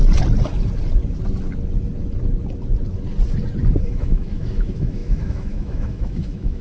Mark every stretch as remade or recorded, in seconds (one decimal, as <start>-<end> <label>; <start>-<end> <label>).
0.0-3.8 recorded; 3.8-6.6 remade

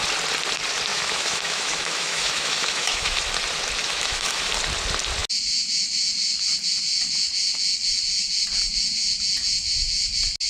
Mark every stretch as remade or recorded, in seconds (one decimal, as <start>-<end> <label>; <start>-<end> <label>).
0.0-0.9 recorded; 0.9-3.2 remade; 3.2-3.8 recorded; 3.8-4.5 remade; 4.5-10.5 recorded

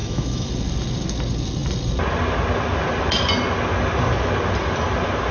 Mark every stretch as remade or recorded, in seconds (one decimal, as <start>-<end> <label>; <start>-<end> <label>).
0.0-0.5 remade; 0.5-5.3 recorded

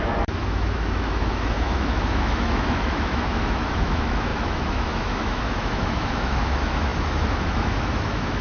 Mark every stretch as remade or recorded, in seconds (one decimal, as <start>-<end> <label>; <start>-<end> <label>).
0.0-8.4 remade